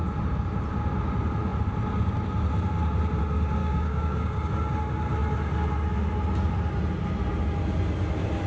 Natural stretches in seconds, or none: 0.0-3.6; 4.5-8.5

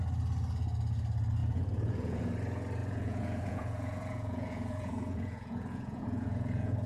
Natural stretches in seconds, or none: 0.0-1.4; 2.2-2.8

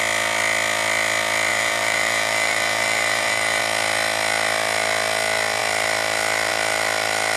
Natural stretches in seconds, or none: 0.0-1.5; 3.6-7.4

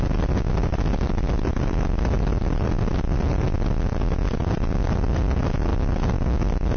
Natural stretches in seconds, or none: 0.0-6.8

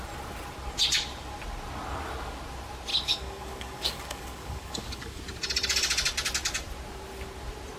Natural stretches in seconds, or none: 0.0-2.9; 5.2-7.8

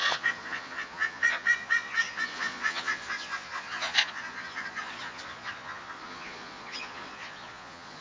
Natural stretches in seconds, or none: none